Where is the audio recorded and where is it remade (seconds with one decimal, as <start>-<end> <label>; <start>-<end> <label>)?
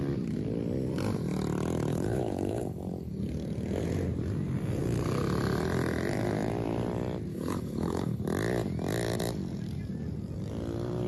0.0-1.9 recorded; 1.9-3.1 remade; 3.1-7.3 recorded; 7.3-8.2 remade; 8.2-11.1 recorded